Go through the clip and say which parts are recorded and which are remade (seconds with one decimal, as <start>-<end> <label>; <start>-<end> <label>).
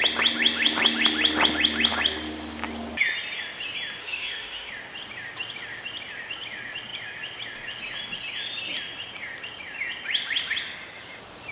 0.0-4.0 recorded; 4.0-4.7 remade; 4.7-11.5 recorded